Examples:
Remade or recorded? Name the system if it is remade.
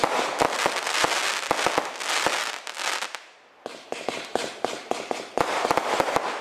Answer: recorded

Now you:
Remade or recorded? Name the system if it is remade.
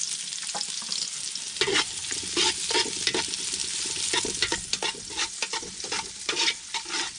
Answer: recorded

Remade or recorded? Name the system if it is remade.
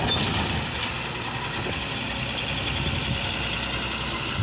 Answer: recorded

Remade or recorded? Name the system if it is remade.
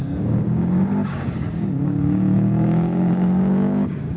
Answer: remade, codec, DAC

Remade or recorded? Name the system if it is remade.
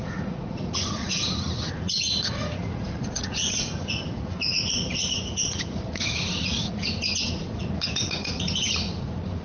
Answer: remade, vocoder, Vocos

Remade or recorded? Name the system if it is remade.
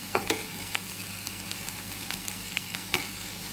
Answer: remade, codec, SNAC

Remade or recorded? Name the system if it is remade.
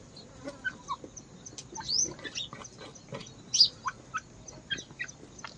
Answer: recorded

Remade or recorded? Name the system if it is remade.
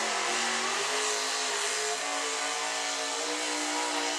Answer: recorded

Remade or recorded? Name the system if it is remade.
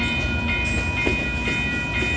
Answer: recorded